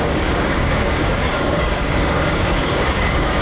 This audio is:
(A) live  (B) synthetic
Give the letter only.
B